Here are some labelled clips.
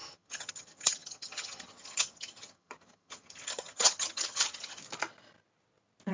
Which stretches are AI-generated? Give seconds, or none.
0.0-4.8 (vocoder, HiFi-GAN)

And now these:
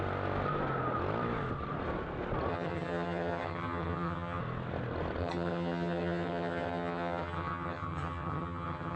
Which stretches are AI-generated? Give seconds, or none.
2.5-4.4 (vocoder, HiFi-GAN); 5.2-9.0

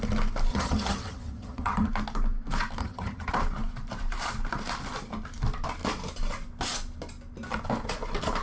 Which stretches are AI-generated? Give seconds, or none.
0.5-1.9 (vocoder, HiFi-GAN); 2.8-3.3

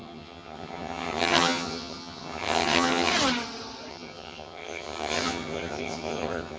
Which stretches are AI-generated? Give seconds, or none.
0.0-3.1 (vocoder, HiFi-GAN); 3.9-6.6

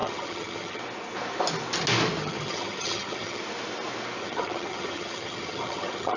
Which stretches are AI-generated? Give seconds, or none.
0.0-0.8 (vocoder, HiFi-GAN); 2.2-3.4; 4.2-6.2

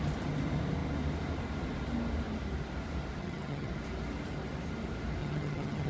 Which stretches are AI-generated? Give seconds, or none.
3.2-3.7 (vocoder, HiFi-GAN); 5.2-5.9

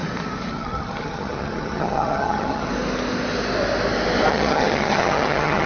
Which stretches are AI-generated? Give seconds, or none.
0.5-2.7 (vocoder, HiFi-GAN); 4.3-5.7

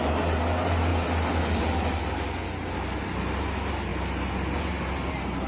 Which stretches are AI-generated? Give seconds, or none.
none